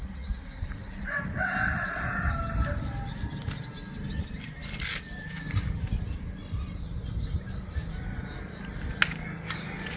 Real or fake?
real